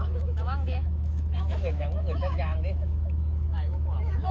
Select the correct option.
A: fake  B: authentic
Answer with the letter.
A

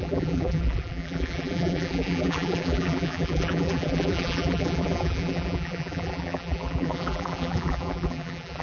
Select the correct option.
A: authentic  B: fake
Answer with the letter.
B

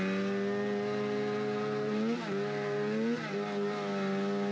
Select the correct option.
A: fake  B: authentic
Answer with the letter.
B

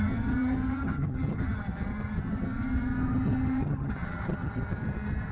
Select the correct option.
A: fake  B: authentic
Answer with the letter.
A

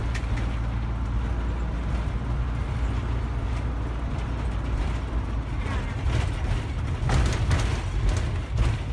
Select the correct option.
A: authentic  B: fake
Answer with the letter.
A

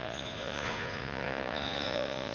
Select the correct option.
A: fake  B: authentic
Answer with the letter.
A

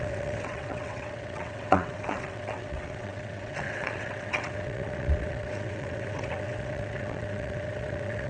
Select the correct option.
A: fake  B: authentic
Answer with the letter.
A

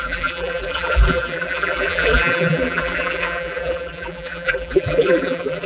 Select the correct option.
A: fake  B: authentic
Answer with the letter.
A